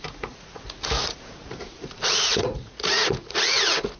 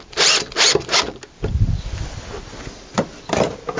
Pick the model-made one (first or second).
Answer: first